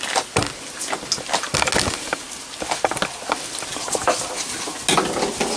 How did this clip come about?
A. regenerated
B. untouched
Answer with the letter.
B